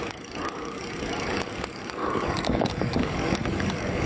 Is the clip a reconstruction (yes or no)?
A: yes